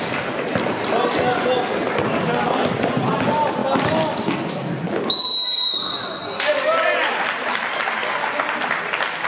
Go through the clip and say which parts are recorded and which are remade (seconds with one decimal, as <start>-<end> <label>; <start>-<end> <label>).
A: 0.0-9.3 recorded